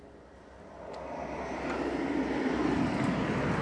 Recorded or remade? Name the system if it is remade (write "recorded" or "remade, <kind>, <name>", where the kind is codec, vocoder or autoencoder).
recorded